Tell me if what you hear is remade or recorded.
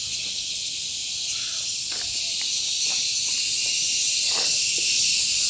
recorded